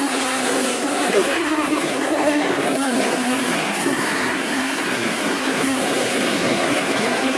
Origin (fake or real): fake